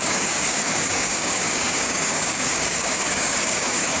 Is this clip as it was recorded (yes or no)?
no